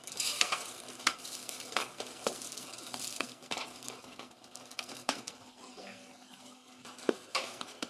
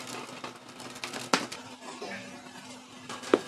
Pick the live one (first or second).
second